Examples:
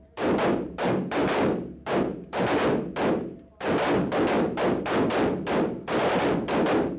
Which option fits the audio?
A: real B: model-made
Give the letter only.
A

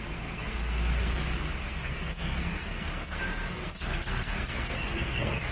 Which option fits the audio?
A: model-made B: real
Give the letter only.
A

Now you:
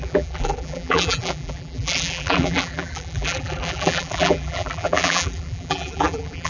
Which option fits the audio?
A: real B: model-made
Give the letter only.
B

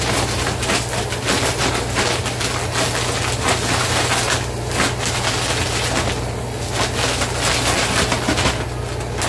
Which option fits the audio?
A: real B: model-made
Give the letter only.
A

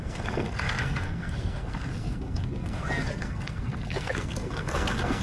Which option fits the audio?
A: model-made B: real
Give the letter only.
A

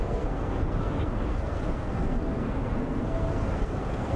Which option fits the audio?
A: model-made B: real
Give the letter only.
A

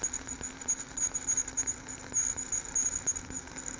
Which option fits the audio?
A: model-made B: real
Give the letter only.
B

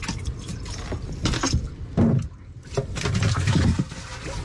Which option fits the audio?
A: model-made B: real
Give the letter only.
B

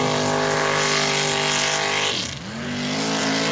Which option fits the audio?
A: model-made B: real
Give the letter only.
B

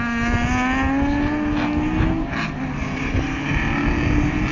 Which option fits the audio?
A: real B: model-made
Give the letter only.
A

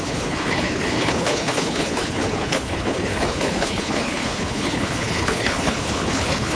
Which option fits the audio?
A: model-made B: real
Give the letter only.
A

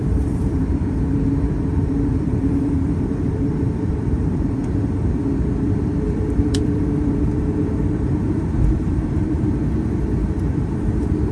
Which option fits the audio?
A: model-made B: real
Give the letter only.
A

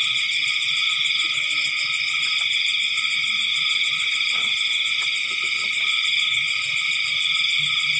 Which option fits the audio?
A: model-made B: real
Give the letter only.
B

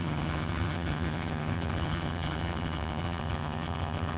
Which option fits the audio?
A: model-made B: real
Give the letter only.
A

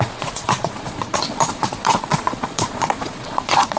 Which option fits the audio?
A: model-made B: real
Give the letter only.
A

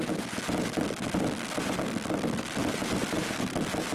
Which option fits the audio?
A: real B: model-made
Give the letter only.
A